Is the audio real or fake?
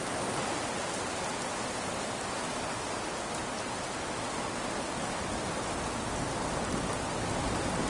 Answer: real